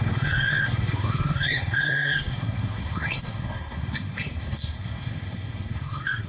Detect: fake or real fake